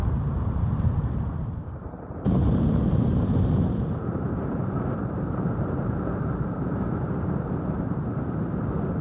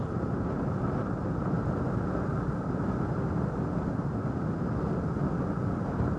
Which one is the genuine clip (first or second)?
second